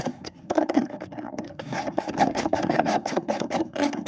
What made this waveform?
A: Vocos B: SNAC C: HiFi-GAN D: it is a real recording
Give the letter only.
B